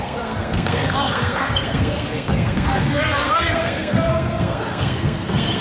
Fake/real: fake